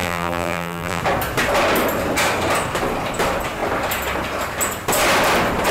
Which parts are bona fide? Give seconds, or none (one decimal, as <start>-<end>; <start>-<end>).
1.0-5.7